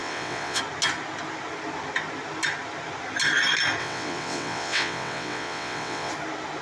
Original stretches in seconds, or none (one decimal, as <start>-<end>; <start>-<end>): 0.6-3.8; 6.1-6.6